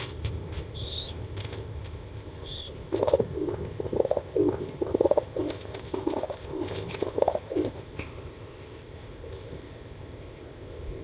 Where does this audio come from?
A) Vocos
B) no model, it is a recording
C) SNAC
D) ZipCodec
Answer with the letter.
D